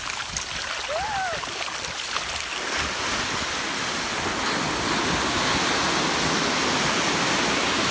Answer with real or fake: real